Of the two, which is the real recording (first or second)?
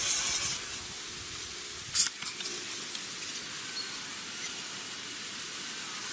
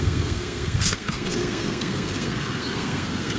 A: first